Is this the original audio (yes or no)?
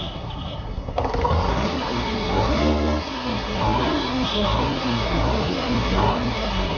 no